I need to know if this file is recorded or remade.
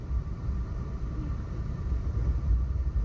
remade